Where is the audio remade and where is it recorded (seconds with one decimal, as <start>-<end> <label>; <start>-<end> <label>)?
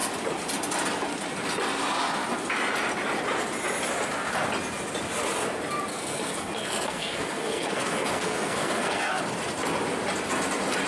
0.0-5.9 recorded; 5.9-9.2 remade; 9.2-10.9 recorded